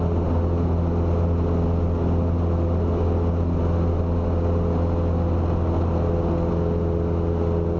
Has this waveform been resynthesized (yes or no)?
no